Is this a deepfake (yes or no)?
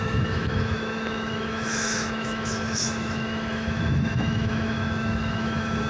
yes